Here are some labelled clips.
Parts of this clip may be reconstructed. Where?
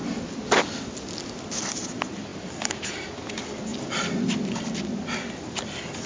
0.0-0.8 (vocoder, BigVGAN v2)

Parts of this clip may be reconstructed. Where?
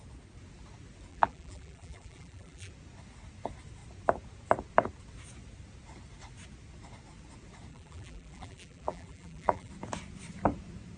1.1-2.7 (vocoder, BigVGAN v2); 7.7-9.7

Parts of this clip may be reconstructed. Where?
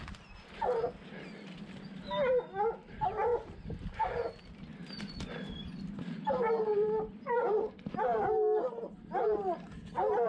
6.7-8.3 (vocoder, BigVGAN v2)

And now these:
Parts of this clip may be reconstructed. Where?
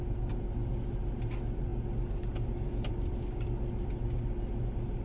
none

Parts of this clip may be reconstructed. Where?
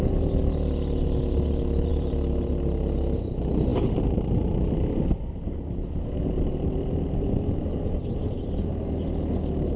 1.9-2.6 (vocoder, BigVGAN v2); 3.7-8.7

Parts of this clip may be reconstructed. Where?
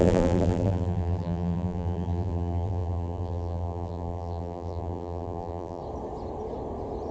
0.0-5.8 (vocoder, BigVGAN v2)